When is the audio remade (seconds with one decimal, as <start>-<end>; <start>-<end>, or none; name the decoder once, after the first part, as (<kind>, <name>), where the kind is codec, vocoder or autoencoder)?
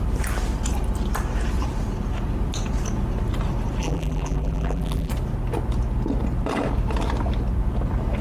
3.8-5.1 (vocoder, BigVGAN v2)